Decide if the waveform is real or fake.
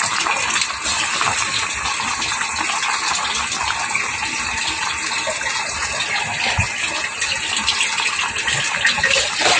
real